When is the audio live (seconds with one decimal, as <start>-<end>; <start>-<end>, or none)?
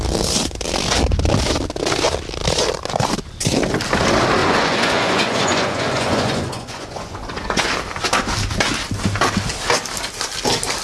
0.0-4.4; 7.7-10.8